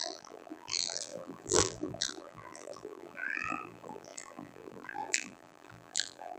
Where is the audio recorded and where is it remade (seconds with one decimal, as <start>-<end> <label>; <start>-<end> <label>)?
0.0-6.4 remade